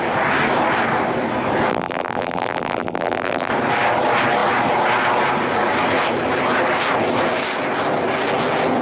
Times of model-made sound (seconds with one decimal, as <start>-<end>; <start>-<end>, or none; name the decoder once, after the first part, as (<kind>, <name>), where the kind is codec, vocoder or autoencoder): 1.7-3.5 (vocoder, BigVGAN v2)